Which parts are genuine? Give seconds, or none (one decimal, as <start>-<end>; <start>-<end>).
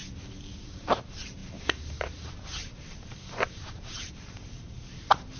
0.0-0.6